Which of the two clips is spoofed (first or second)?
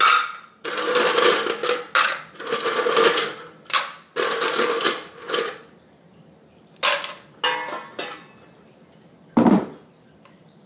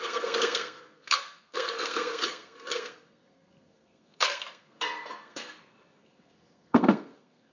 second